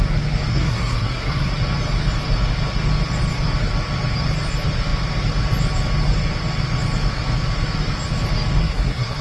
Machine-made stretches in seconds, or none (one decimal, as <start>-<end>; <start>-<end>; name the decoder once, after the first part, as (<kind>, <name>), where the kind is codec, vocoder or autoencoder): 0.5-1.5 (codec, SNAC); 8.6-9.2